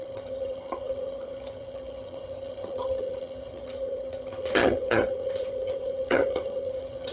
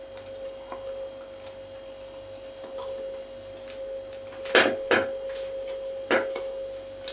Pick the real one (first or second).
second